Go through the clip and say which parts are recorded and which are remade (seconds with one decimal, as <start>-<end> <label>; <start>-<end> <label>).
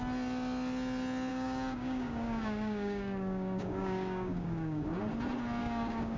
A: 0.0-1.3 recorded; 1.3-5.0 remade; 5.0-5.6 recorded; 5.6-6.2 remade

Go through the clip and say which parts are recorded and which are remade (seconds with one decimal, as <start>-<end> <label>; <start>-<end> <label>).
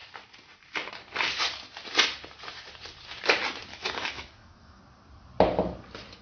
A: 0.0-3.7 recorded; 3.7-4.8 remade; 4.8-6.2 recorded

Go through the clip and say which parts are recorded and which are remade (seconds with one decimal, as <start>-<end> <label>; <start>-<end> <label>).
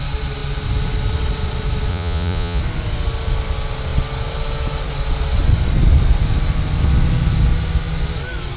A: 0.0-1.9 recorded; 1.9-2.6 remade; 2.6-8.6 recorded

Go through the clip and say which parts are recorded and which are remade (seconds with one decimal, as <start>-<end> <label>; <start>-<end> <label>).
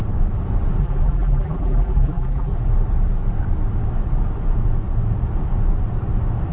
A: 0.0-0.8 recorded; 0.8-2.5 remade; 2.5-6.5 recorded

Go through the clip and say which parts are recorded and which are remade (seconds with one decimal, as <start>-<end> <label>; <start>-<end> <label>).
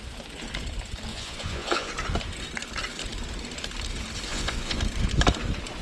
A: 0.0-1.1 recorded; 1.1-1.9 remade; 1.9-4.3 recorded; 4.3-4.8 remade; 4.8-5.8 recorded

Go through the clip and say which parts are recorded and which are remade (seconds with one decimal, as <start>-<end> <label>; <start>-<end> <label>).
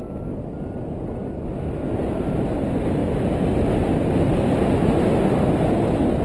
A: 0.0-6.2 recorded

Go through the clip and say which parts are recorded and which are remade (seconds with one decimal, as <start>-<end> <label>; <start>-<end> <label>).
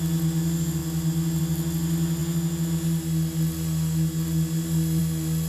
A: 0.0-5.5 recorded